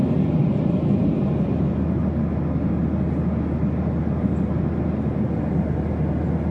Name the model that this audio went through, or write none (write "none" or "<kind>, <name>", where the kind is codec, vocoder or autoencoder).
none